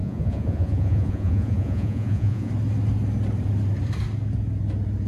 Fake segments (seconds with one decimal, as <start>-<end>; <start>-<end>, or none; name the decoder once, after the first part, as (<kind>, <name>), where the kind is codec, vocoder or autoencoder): 0.0-2.5 (vocoder, Vocos)